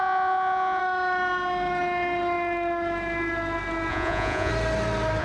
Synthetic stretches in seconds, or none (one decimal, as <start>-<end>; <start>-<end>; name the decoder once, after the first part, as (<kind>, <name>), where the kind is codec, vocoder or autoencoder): 0.0-0.8 (vocoder, Vocos); 3.9-4.5